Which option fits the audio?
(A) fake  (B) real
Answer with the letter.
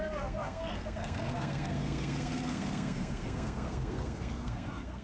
A